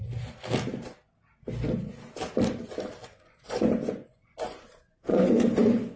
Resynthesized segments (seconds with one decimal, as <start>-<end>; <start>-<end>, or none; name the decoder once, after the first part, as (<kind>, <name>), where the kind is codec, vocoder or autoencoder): 3.0-5.3 (vocoder, Vocos)